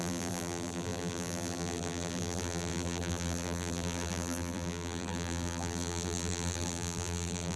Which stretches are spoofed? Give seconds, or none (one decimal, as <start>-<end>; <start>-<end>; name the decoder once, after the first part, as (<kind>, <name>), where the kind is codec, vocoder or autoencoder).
0.0-7.6 (vocoder, BigVGAN v2)